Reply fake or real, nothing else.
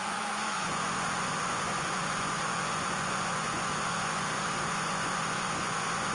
fake